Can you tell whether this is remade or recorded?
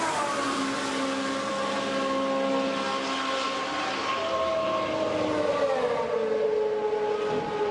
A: recorded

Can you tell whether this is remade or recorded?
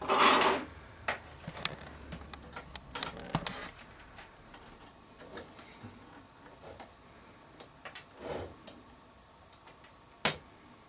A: recorded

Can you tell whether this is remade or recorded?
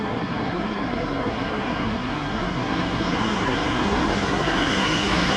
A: remade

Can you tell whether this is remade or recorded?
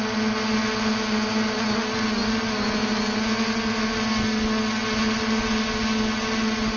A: recorded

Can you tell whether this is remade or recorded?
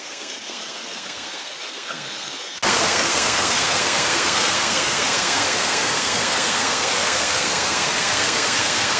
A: remade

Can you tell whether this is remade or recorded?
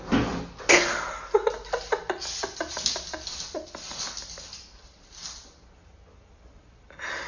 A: recorded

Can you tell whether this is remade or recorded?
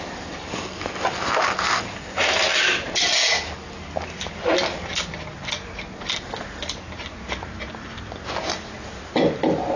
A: recorded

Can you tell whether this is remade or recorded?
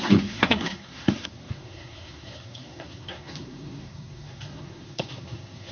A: remade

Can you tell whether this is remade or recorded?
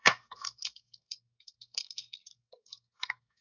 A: remade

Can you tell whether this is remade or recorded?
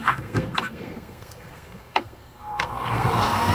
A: remade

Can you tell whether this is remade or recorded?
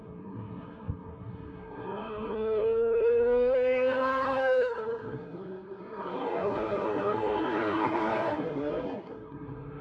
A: remade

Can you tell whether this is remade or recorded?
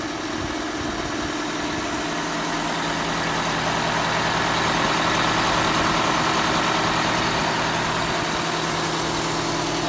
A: recorded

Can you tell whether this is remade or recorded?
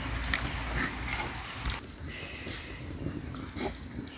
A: recorded